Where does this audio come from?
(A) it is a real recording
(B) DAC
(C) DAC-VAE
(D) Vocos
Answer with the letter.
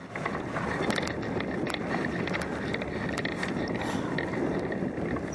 A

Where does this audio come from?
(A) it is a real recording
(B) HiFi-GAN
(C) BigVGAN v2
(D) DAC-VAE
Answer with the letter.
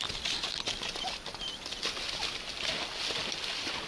A